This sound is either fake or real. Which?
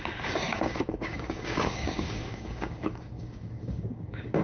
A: fake